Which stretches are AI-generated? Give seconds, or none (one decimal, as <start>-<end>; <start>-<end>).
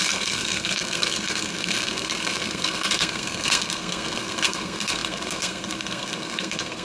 0.0-6.8